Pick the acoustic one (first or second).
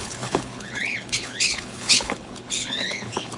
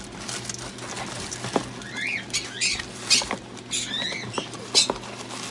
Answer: second